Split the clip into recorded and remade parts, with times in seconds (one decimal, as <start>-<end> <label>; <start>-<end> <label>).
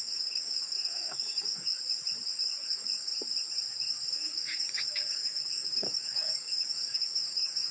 0.0-1.7 remade; 1.7-2.6 recorded; 2.6-3.1 remade; 3.1-4.1 recorded; 4.1-7.7 remade